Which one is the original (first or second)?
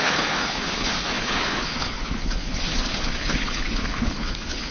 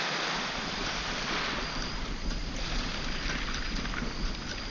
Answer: second